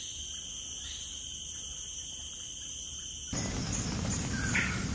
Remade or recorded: recorded